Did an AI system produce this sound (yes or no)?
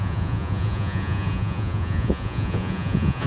yes